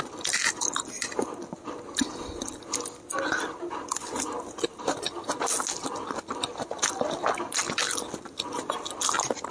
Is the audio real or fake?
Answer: real